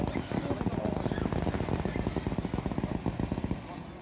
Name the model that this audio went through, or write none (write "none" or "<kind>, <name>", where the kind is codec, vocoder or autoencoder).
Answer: none